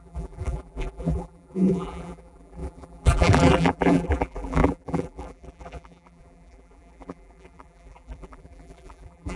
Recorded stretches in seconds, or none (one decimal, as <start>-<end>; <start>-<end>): none